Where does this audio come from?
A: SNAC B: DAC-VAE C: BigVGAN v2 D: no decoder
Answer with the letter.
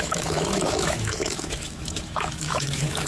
B